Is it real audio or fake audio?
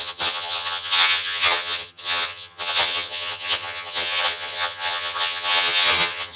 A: fake